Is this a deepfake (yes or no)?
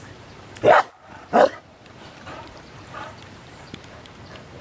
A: yes